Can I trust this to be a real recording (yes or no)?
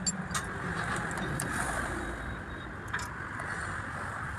yes